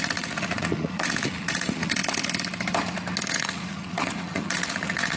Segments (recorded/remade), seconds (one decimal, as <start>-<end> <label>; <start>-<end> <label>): 0.0-2.0 remade; 2.0-3.3 recorded; 3.3-5.2 remade